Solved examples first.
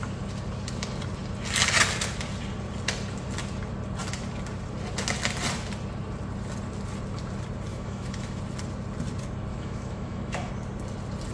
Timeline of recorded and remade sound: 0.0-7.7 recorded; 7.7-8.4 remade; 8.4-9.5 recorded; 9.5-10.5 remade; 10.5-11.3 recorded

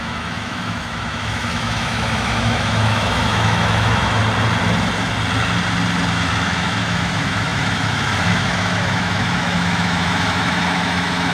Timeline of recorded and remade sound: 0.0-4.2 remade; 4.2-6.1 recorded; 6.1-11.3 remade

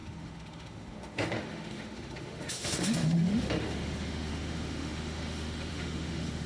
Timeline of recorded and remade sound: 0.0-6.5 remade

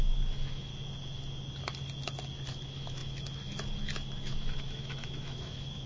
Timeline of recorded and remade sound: 0.0-0.7 remade; 0.7-2.5 recorded; 2.5-5.9 remade